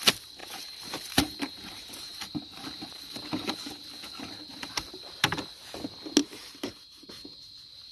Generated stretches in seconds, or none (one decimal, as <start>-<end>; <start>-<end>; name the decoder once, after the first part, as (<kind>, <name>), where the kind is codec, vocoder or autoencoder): 0.4-3.8 (vocoder, BigVGAN v2); 4.5-5.2; 6.2-7.1